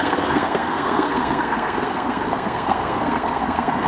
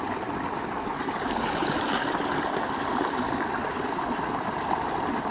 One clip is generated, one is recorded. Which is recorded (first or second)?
second